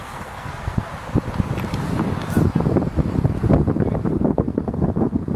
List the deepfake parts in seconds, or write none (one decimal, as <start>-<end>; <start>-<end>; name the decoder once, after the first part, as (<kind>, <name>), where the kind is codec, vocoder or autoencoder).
0.0-0.9 (codec, SNAC); 4.1-5.4